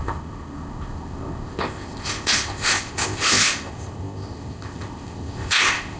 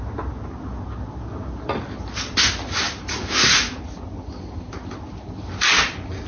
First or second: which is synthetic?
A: first